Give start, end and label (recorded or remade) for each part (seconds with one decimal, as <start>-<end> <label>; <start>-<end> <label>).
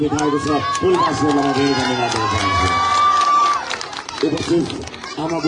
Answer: 0.0-2.9 recorded; 2.9-5.1 remade; 5.1-5.5 recorded